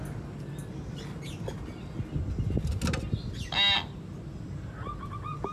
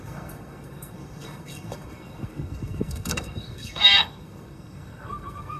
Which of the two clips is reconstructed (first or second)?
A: second